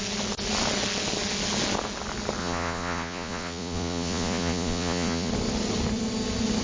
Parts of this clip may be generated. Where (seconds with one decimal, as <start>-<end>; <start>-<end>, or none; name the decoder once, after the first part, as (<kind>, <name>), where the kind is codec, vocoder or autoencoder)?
2.4-5.3 (vocoder, Vocos)